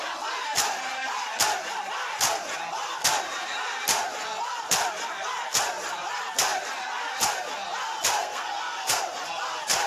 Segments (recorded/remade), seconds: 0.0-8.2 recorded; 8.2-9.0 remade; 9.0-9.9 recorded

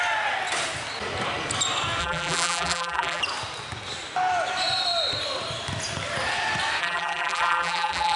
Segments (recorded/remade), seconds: 0.0-2.0 recorded; 2.0-3.2 remade; 3.2-6.8 recorded; 6.8-8.2 remade

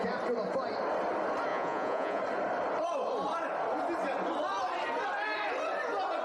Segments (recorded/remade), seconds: 0.0-1.5 recorded; 1.5-2.2 remade; 2.2-6.2 recorded

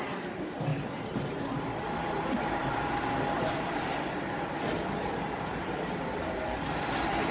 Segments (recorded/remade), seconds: 0.0-7.3 recorded

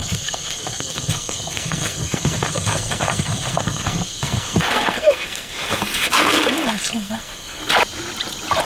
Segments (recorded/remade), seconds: 0.0-7.6 remade; 7.6-8.6 recorded

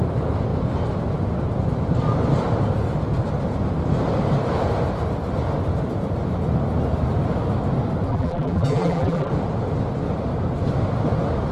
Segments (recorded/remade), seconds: 0.0-8.1 recorded; 8.1-9.3 remade; 9.3-11.5 recorded

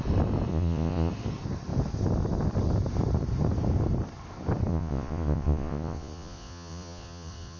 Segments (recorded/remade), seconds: 0.0-0.5 recorded; 0.5-1.1 remade; 1.1-4.7 recorded; 4.7-7.6 remade